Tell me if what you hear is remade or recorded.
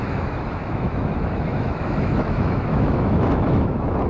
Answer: remade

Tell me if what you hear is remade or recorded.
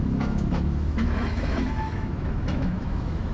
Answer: remade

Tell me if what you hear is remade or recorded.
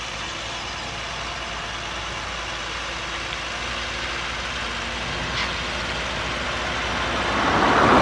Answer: recorded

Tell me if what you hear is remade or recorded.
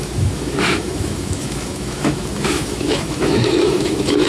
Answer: remade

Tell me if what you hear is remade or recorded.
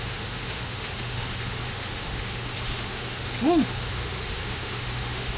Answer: remade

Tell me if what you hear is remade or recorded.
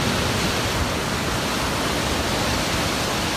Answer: recorded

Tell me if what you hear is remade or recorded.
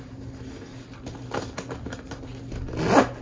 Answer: recorded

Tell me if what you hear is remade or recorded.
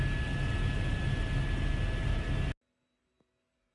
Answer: recorded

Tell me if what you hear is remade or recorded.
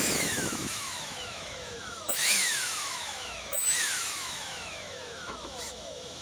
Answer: remade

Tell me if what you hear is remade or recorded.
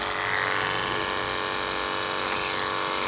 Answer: recorded